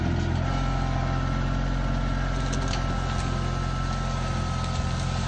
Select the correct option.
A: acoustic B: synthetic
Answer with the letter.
A